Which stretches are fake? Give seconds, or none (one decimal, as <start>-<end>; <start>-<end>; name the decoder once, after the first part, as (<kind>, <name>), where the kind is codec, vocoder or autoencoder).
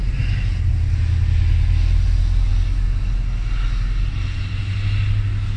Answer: none